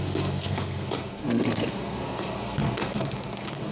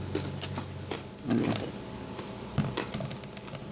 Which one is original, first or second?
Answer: second